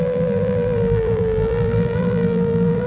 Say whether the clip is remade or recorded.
remade